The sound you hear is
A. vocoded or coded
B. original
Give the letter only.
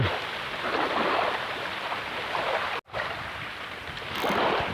B